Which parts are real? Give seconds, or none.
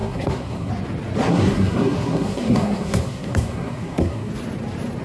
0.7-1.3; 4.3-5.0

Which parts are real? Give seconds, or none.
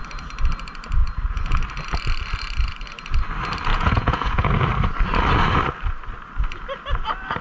0.0-3.7; 4.5-7.4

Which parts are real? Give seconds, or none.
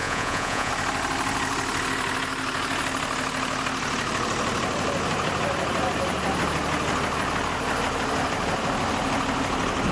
0.7-9.9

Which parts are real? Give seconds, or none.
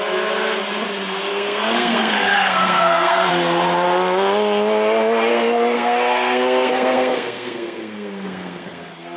0.0-1.3; 3.3-5.3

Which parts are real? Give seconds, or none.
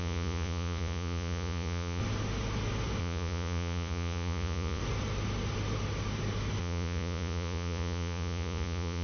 2.0-3.0; 4.8-6.6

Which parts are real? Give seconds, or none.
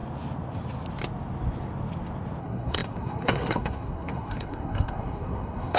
0.0-2.4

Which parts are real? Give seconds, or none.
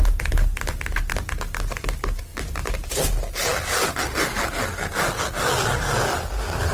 0.0-2.3; 3.1-6.7